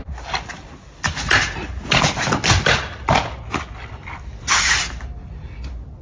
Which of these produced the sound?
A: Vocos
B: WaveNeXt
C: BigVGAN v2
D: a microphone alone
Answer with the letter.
D